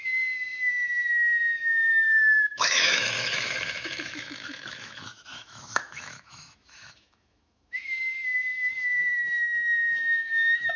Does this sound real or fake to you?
fake